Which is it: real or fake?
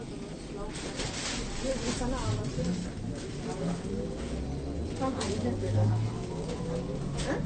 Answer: real